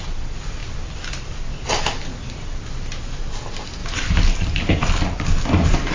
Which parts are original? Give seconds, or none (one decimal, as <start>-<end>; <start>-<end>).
0.0-5.9